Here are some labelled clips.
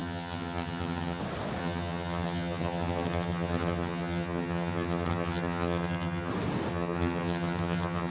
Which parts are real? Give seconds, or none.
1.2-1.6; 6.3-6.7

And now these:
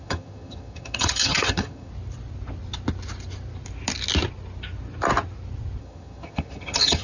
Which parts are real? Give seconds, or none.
1.9-5.8

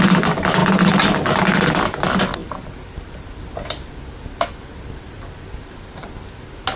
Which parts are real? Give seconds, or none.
0.0-6.8

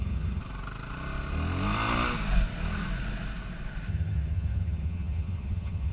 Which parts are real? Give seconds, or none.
0.4-3.9

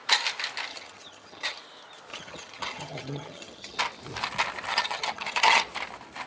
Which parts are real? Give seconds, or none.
0.0-0.7; 1.6-2.1; 3.8-4.7; 5.6-6.3

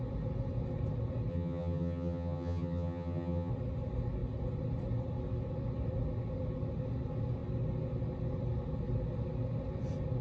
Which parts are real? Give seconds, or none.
0.0-1.3; 3.5-10.2